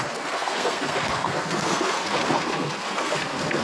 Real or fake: fake